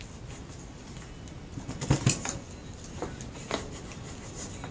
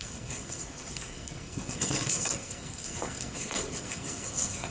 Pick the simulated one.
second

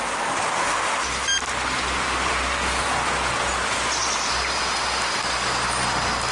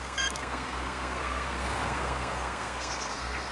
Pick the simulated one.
second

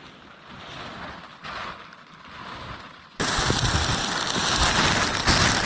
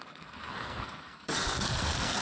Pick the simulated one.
second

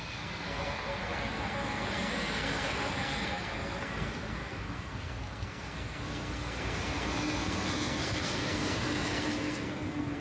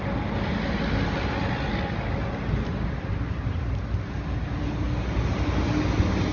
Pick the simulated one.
first